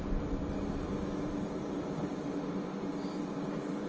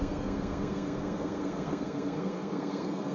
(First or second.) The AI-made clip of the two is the second